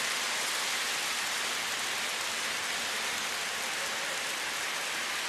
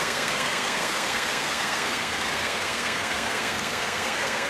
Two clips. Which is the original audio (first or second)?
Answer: first